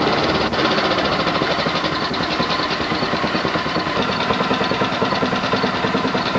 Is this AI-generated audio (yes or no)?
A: yes